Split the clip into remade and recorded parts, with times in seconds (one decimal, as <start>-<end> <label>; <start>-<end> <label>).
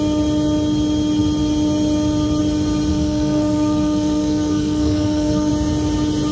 0.0-2.9 recorded; 2.9-5.5 remade; 5.5-6.3 recorded